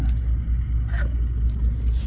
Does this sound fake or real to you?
real